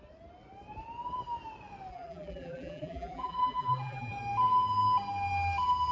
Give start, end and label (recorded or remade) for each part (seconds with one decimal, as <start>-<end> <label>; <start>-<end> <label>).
0.0-1.9 recorded; 1.9-4.1 remade; 4.1-5.9 recorded